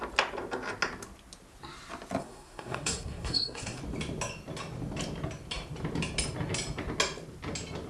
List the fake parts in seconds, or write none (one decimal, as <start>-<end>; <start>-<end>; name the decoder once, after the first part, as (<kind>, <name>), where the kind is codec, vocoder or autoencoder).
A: 2.2-3.8 (codec, SNAC)